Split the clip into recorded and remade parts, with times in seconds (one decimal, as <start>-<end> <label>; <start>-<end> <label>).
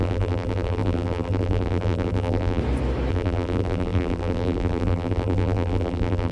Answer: 0.0-2.6 remade; 2.6-3.1 recorded; 3.1-6.3 remade